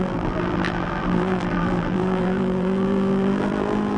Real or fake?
fake